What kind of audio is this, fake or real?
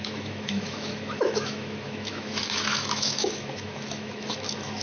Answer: fake